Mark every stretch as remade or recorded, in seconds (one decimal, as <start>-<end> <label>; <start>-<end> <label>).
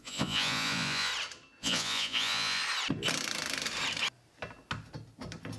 0.0-1.1 remade; 1.1-1.6 recorded; 1.6-2.6 remade; 2.6-5.6 recorded